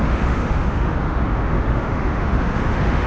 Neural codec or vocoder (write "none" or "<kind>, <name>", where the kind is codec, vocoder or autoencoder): autoencoder, DAC-VAE